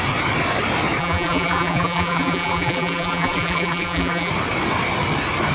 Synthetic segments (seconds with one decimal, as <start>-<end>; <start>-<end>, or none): 1.0-4.3